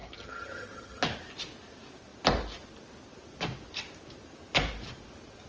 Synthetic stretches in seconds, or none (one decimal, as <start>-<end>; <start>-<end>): 0.0-1.0